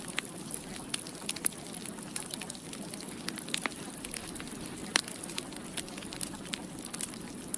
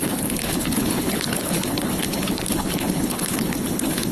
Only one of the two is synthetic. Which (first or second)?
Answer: second